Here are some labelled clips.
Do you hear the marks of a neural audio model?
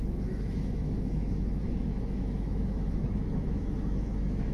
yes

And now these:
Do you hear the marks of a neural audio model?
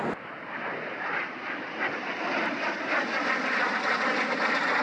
no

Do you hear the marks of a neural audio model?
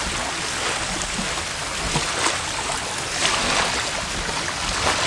no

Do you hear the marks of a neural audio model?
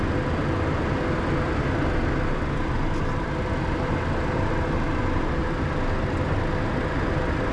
no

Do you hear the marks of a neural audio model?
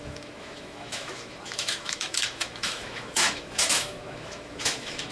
yes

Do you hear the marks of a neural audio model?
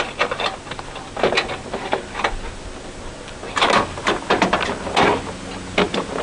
no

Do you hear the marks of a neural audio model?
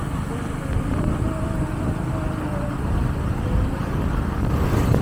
no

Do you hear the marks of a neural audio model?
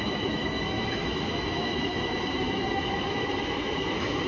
yes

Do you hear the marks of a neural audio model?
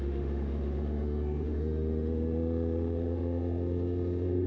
yes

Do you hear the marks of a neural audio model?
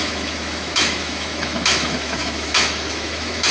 yes